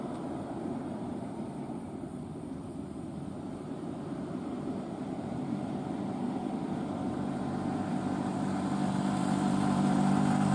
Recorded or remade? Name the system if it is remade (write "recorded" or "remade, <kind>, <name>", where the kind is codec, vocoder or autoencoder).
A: remade, vocoder, BigVGAN v2